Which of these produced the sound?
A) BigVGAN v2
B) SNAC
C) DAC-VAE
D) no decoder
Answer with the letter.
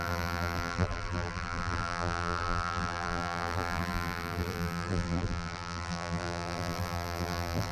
A